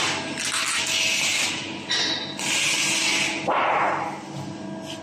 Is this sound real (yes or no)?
yes